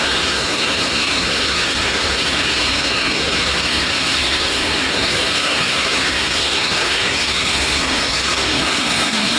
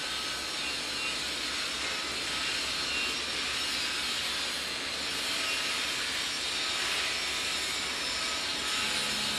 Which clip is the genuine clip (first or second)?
second